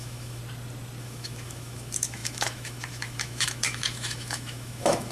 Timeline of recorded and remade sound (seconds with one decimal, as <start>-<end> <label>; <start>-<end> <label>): 0.0-0.4 remade; 0.4-1.0 recorded; 1.0-5.1 remade